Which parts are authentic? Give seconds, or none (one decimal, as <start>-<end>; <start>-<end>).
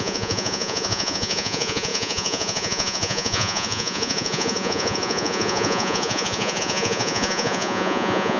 none